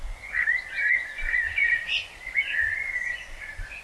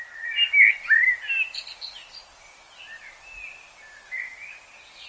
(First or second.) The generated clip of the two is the first